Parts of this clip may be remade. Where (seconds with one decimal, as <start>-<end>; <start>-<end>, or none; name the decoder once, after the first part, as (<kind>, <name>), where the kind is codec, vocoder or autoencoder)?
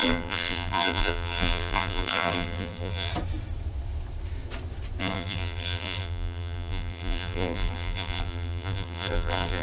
0.0-3.1 (vocoder, BigVGAN v2); 5.0-9.6